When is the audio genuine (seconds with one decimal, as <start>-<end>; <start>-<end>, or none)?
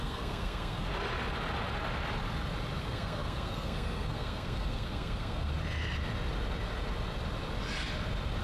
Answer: 0.9-2.8; 5.5-8.4